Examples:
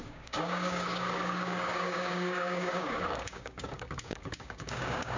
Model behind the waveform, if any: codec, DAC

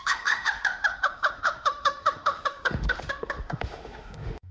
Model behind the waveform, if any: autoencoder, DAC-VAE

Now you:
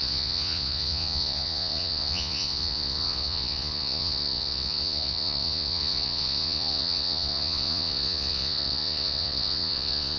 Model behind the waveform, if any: vocoder, Vocos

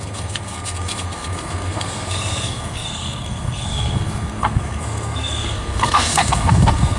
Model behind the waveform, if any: codec, SNAC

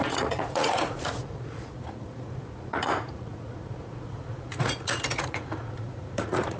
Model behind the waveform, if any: vocoder, Vocos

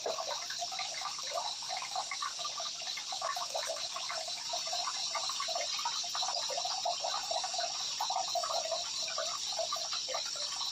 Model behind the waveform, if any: none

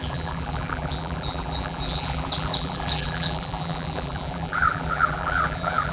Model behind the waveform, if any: vocoder, BigVGAN v2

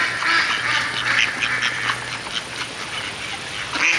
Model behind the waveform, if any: none